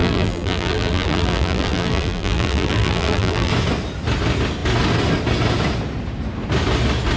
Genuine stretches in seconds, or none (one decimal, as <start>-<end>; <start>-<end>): 3.5-7.2